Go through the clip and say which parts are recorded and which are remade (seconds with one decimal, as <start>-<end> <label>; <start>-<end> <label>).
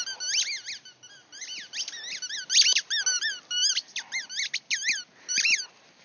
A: 0.0-6.0 recorded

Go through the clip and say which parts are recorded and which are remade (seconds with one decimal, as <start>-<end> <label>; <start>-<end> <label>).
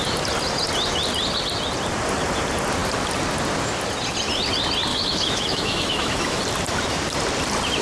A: 0.0-4.9 recorded; 4.9-6.4 remade; 6.4-7.8 recorded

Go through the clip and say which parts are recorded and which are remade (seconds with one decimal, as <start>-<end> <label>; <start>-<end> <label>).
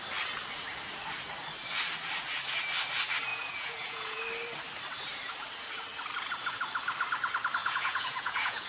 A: 0.0-3.3 recorded; 3.3-4.2 remade; 4.2-7.6 recorded; 7.6-8.7 remade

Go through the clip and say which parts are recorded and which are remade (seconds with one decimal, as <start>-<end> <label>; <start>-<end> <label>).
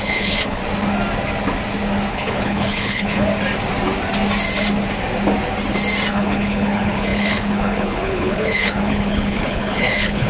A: 0.0-0.6 remade; 0.6-2.1 recorded; 2.1-3.3 remade; 3.3-6.1 recorded; 6.1-10.3 remade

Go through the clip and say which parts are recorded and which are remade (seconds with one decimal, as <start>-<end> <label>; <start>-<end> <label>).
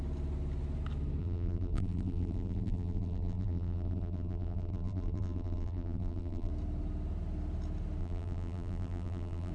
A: 0.0-1.2 recorded; 1.2-6.5 remade; 6.5-8.0 recorded; 8.0-9.5 remade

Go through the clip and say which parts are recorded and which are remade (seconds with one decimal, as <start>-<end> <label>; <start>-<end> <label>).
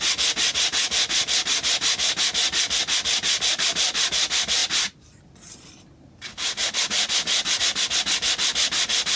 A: 0.0-9.2 recorded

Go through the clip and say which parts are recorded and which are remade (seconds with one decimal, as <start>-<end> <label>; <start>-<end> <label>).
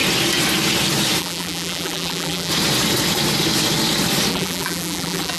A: 0.0-1.2 recorded; 1.2-2.5 remade; 2.5-4.3 recorded; 4.3-5.4 remade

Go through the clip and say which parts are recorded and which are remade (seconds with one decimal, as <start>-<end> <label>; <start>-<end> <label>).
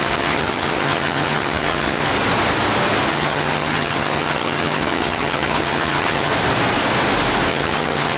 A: 0.0-2.1 remade; 2.1-3.1 recorded; 3.1-6.3 remade; 6.3-7.5 recorded; 7.5-8.2 remade